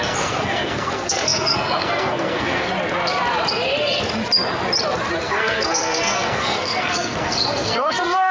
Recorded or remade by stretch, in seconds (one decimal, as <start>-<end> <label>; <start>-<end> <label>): 0.0-2.7 remade; 2.7-5.2 recorded; 5.2-8.3 remade